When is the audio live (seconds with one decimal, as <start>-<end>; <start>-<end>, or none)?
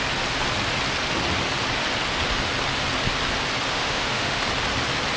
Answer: 0.0-3.7; 4.5-5.2